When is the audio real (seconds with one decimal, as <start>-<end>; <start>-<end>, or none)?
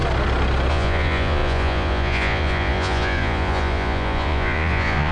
0.0-0.7